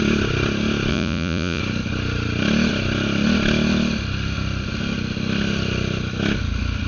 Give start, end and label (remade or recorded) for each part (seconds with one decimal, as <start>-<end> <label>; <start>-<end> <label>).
0.0-0.9 recorded; 0.9-1.6 remade; 1.6-6.9 recorded